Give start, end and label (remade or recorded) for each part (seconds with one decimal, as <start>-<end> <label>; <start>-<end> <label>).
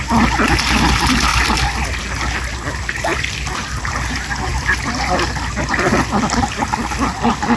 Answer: 0.0-7.6 recorded